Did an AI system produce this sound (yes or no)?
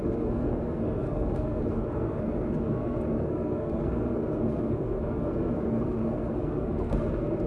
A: yes